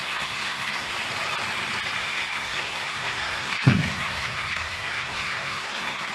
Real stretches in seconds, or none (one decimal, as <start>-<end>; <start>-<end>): 0.9-2.0